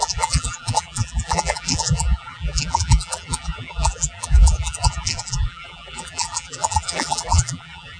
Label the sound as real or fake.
fake